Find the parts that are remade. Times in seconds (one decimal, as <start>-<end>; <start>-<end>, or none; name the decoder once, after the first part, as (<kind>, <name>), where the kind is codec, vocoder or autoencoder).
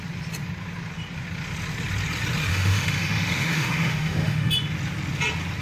2.5-4.5 (autoencoder, DAC-VAE)